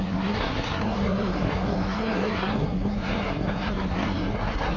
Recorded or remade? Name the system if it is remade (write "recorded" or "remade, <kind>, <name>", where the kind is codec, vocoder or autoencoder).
remade, codec, SNAC